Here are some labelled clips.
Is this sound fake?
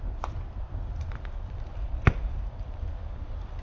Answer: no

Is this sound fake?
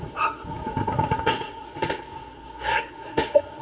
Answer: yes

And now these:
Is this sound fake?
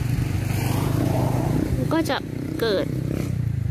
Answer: no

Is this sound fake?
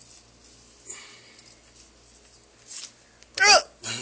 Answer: no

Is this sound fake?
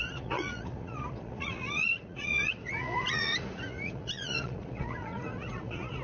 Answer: yes